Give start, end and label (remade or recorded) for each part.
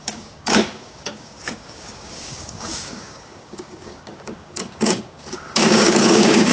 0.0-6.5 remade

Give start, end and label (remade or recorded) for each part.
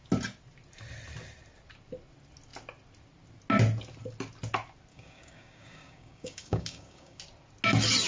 0.0-4.9 recorded; 4.9-7.2 remade; 7.2-8.1 recorded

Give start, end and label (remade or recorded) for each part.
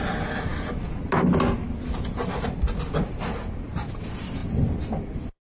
0.0-5.5 recorded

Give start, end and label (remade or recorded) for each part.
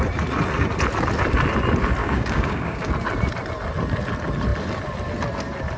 0.0-2.0 recorded; 2.0-2.9 remade; 2.9-5.8 recorded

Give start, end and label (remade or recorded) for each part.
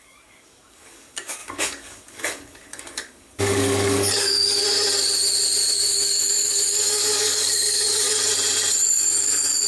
0.0-4.6 remade; 4.6-5.7 recorded; 5.7-8.3 remade; 8.3-9.0 recorded; 9.0-9.7 remade